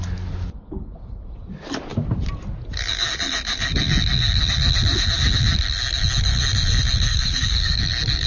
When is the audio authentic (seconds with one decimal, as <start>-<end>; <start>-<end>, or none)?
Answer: 0.0-7.1; 7.8-8.3